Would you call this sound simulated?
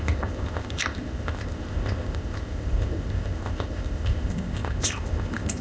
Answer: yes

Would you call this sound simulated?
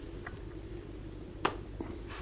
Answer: no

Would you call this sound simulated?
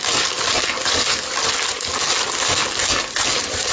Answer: no